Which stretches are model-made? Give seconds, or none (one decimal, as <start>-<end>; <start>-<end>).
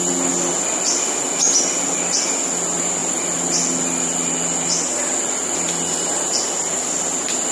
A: none